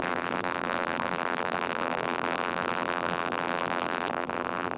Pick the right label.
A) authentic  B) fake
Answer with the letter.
B